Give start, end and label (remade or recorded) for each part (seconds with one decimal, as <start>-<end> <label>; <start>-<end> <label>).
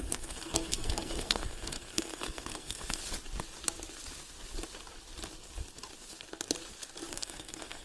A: 0.0-3.0 remade; 3.0-7.1 recorded; 7.1-7.8 remade